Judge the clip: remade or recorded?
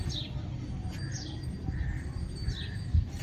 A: recorded